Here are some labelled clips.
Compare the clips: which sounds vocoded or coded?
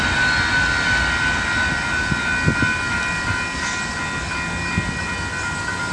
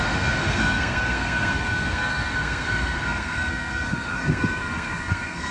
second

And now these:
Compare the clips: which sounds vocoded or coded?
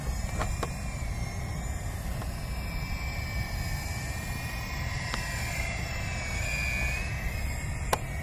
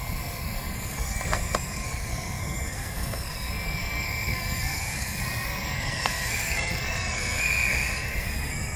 second